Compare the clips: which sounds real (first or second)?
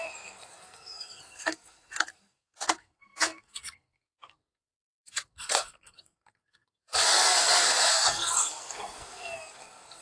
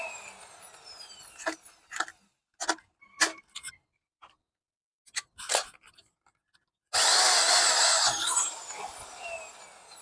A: second